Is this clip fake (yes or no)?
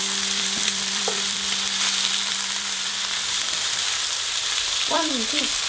yes